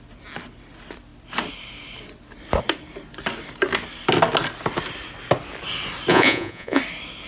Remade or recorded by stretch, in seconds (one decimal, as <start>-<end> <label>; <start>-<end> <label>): 0.0-6.1 recorded; 6.1-6.8 remade; 6.8-7.3 recorded